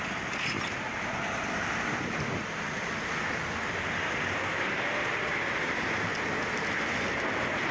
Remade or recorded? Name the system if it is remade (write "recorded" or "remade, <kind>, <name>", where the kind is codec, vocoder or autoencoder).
recorded